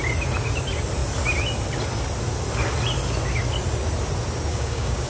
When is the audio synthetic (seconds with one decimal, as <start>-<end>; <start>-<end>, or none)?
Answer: 4.5-5.1